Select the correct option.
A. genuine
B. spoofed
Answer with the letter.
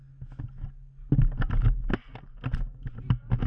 A